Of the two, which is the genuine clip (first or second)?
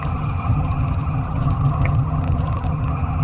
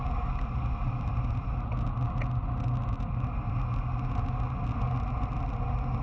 second